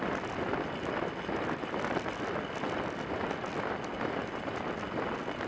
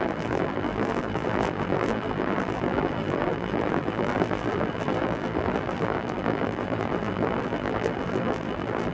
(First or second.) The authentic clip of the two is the first